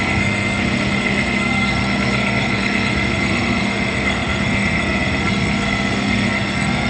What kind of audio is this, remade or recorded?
remade